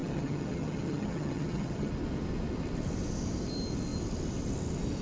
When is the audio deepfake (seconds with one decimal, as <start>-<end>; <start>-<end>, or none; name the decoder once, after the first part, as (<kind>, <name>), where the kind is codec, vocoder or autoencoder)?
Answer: 0.0-1.9 (vocoder, HiFi-GAN)